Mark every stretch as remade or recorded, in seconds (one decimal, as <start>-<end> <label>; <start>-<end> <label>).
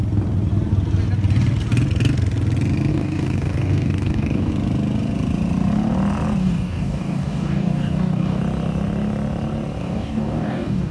0.0-2.9 recorded; 2.9-4.5 remade; 4.5-6.4 recorded; 6.4-8.4 remade; 8.4-9.8 recorded; 9.8-10.9 remade